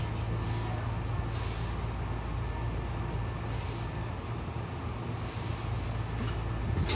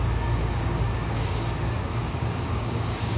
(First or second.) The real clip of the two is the first